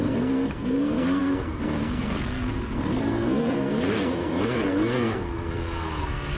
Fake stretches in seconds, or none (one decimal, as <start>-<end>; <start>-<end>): 0.0-6.4